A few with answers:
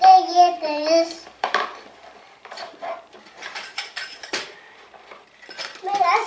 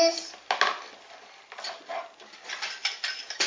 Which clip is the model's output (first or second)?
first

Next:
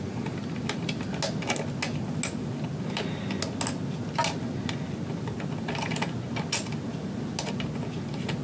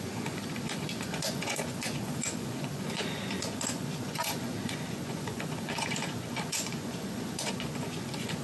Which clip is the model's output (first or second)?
second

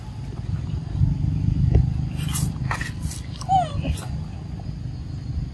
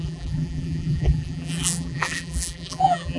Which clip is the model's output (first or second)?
second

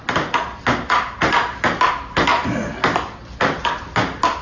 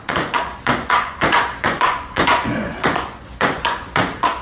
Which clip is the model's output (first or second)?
second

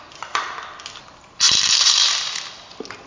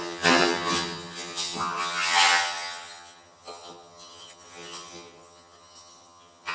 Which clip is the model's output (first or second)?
second